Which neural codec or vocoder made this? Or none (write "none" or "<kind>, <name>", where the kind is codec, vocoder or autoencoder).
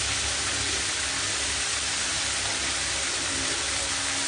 none